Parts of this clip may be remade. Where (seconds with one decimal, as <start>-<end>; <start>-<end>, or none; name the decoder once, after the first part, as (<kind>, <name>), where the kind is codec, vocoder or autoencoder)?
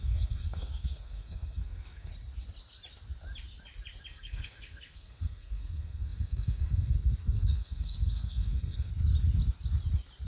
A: 0.0-2.1 (codec, SNAC); 4.1-8.9